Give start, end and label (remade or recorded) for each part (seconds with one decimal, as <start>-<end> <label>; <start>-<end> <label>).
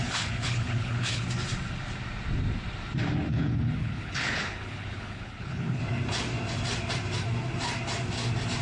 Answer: 0.0-1.2 remade; 1.2-3.3 recorded; 3.3-5.8 remade; 5.8-8.6 recorded